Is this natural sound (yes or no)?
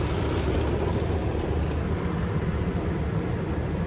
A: yes